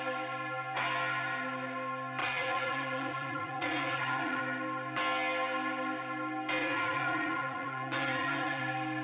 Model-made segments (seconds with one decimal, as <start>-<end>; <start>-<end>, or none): 2.2-4.4; 6.6-8.6